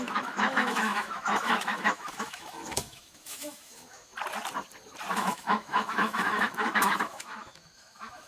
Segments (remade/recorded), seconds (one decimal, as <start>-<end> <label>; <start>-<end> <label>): 0.0-4.1 remade; 4.1-5.1 recorded; 5.1-8.3 remade